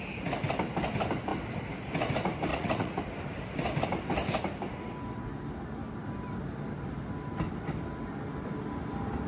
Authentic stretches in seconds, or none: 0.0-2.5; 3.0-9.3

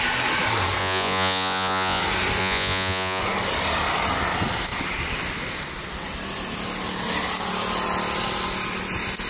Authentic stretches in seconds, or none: 0.0-0.8; 2.0-2.4; 3.2-9.3